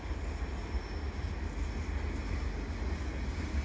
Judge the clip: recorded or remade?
recorded